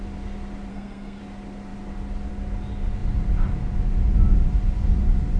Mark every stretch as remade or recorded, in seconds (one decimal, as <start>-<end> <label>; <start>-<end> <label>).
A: 0.0-0.7 recorded; 0.7-1.2 remade; 1.2-5.4 recorded